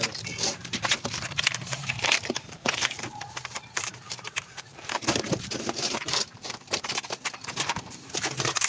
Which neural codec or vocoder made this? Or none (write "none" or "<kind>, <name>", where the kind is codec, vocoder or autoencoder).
vocoder, BigVGAN v2